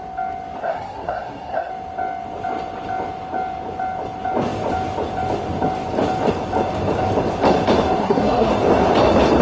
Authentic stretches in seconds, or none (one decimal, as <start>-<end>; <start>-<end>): 0.0-0.6; 1.7-8.0; 8.5-9.4